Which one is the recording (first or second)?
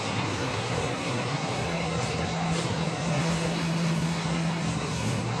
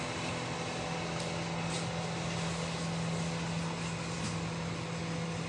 second